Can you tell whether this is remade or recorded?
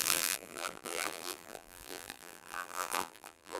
remade